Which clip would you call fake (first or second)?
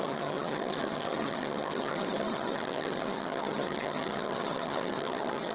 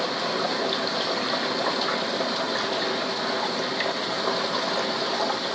first